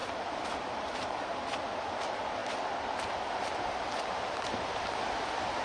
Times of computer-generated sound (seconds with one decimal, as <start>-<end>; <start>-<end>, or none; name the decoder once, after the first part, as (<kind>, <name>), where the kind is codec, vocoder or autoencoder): none